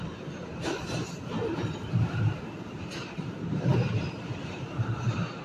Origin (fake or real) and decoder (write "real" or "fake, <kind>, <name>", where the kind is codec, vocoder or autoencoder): fake, vocoder, BigVGAN v2